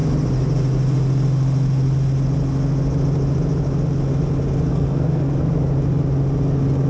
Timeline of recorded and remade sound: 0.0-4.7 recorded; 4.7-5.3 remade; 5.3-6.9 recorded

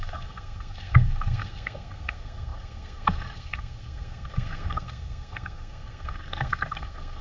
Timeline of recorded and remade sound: 0.0-7.2 remade

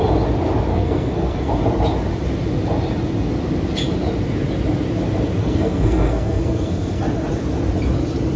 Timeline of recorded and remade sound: 0.0-0.7 recorded; 0.7-1.5 remade; 1.5-5.4 recorded; 5.4-7.0 remade; 7.0-8.4 recorded

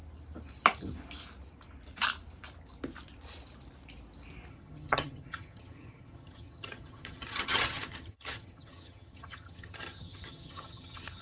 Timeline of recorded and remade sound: 0.0-4.5 recorded; 4.5-11.2 remade

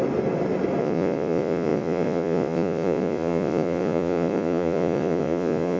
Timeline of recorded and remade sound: 0.0-0.8 recorded; 0.8-5.8 remade

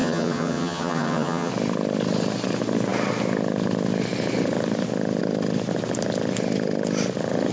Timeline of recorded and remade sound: 0.0-1.5 remade; 1.5-7.5 recorded